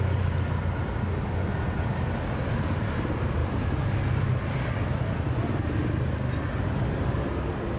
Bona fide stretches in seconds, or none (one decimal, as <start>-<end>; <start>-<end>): 0.0-7.8